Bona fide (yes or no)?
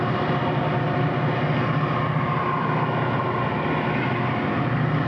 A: yes